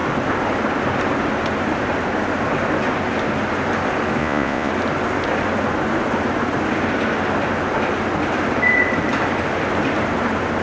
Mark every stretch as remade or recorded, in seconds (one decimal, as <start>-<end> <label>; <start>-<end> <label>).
0.0-4.2 recorded; 4.2-4.7 remade; 4.7-10.6 recorded